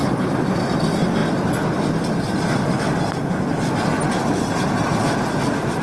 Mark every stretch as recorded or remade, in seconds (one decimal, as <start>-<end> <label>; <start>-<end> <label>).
0.0-5.8 recorded